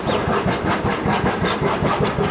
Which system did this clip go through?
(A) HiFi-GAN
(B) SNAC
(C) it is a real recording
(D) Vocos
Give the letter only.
C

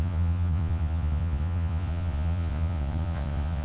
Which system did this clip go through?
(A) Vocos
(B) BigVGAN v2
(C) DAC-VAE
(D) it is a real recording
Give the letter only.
A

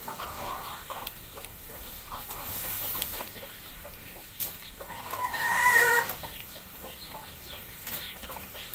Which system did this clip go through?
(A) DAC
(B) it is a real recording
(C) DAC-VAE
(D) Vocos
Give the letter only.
A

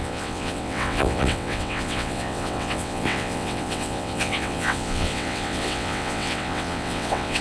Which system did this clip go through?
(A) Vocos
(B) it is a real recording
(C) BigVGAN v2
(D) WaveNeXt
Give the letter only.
D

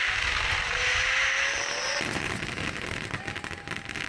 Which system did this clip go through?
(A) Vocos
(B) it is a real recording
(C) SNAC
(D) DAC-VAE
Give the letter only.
B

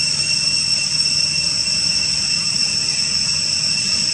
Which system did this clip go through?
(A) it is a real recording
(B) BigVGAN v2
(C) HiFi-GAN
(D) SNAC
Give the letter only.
A